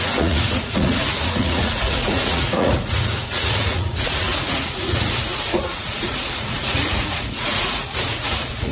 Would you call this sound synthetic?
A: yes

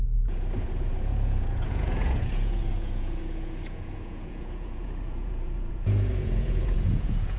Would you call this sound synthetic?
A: yes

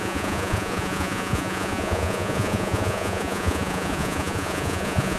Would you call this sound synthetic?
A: yes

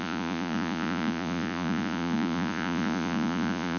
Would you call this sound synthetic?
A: yes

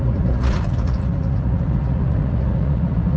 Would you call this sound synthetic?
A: yes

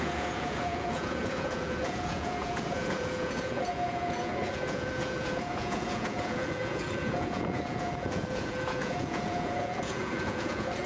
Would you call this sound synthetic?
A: yes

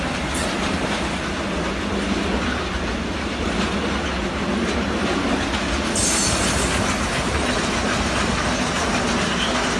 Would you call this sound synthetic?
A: no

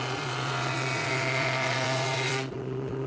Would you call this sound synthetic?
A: yes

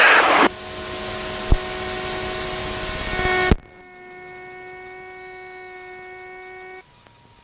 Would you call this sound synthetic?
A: no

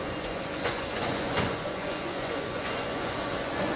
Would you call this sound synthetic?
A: yes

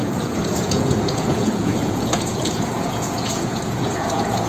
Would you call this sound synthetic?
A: yes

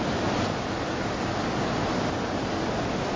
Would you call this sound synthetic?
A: no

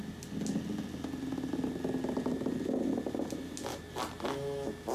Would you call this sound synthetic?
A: no